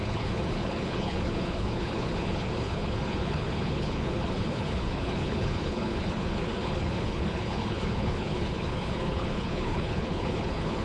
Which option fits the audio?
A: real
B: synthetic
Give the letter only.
B